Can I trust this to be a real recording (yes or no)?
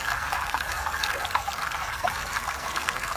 no